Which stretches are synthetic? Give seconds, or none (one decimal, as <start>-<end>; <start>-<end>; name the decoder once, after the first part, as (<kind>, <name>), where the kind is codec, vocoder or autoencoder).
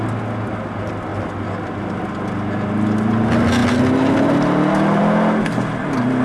none